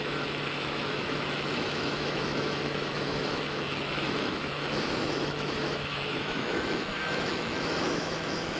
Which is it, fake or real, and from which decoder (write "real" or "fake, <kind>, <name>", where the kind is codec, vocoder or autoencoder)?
fake, autoencoder, DAC-VAE